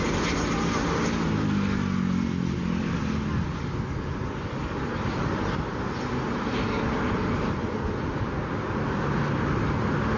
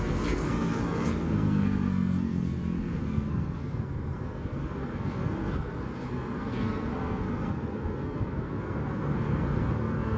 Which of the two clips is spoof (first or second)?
second